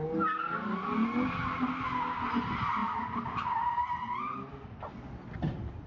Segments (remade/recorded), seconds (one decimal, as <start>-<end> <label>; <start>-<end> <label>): 0.0-5.9 recorded